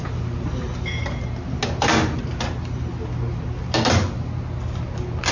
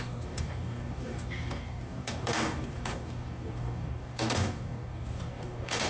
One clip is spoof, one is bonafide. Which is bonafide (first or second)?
first